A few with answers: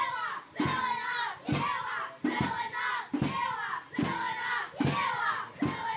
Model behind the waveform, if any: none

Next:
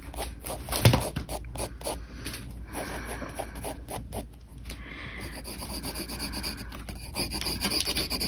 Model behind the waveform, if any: none